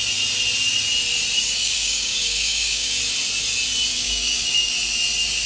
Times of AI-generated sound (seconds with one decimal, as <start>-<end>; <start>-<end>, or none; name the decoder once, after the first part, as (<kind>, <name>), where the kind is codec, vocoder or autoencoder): 1.4-3.0 (codec, DAC); 3.9-4.7